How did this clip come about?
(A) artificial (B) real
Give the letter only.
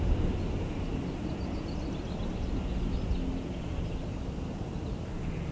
B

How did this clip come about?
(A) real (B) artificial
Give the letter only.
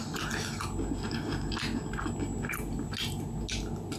A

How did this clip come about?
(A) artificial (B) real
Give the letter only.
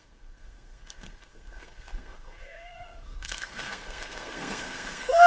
A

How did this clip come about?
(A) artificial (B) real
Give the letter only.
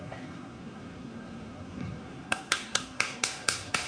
A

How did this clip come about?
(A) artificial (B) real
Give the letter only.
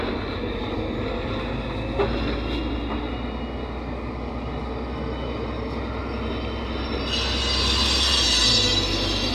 B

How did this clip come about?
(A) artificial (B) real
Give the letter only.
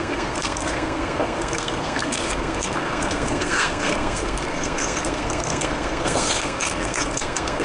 A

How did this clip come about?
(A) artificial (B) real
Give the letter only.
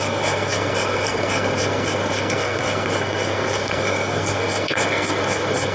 A